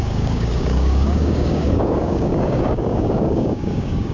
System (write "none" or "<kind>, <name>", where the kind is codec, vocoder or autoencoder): codec, DAC